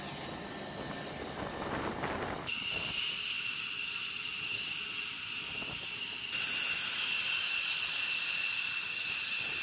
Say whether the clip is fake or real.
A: real